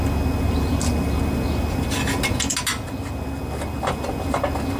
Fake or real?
real